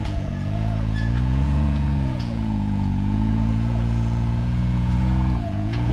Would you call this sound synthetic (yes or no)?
yes